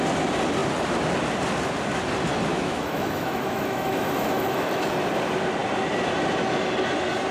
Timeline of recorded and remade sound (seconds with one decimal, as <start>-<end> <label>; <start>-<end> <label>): 0.0-2.5 recorded; 2.5-4.9 remade; 4.9-7.3 recorded